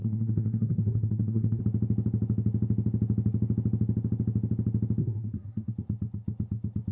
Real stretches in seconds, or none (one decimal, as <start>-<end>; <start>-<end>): 1.6-5.0; 5.7-6.9